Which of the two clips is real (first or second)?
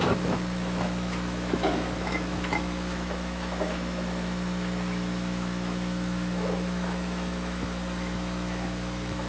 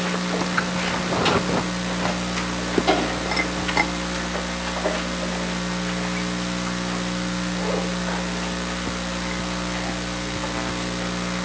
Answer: second